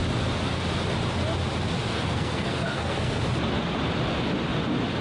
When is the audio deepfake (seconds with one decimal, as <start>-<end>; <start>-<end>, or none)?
1.9-3.2